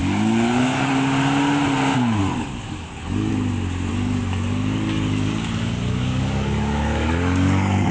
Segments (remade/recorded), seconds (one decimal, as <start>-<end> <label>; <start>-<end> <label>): 0.0-0.9 remade; 0.9-2.2 recorded; 2.2-3.3 remade; 3.3-3.9 recorded; 3.9-7.9 remade